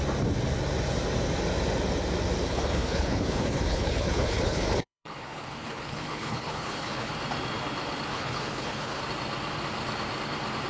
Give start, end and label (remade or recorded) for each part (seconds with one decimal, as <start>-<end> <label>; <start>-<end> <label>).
0.0-2.5 recorded; 2.5-7.1 remade; 7.1-8.1 recorded; 8.1-9.0 remade; 9.0-10.7 recorded